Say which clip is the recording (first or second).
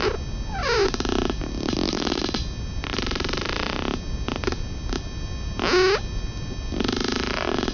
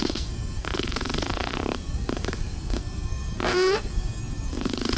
first